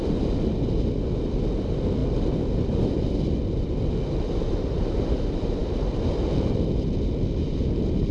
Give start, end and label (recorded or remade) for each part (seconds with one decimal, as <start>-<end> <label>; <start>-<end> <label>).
0.0-8.1 recorded